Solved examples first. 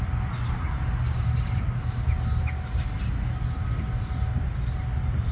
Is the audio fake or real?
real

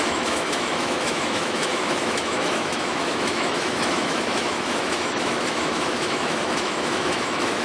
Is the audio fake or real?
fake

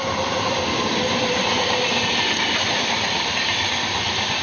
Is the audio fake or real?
fake